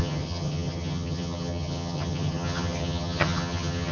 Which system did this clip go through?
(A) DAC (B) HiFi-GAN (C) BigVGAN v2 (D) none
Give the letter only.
B